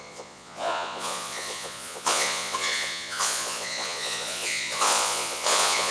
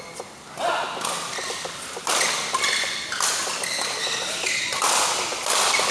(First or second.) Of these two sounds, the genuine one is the second